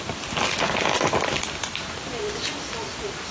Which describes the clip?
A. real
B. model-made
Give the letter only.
A